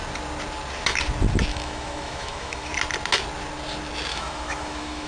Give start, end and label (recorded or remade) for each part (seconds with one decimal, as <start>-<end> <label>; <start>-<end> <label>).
0.0-1.5 recorded; 1.5-2.7 remade; 2.7-4.1 recorded; 4.1-5.1 remade